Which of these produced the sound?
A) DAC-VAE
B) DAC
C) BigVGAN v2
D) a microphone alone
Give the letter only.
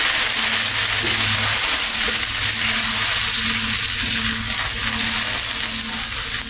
D